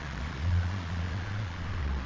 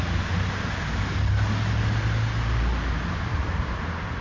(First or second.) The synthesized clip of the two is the first